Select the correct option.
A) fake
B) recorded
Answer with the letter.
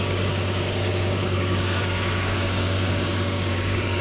A